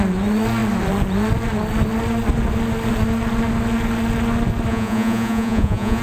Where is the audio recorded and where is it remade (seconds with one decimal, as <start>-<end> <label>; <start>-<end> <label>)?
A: 0.0-4.7 recorded; 4.7-6.0 remade